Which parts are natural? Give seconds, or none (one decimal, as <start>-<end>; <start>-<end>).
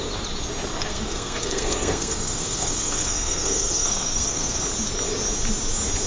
0.0-0.9; 4.6-6.1